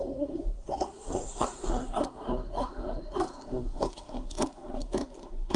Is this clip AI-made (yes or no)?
yes